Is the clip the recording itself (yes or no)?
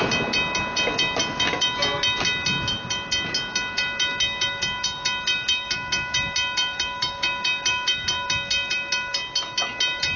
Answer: yes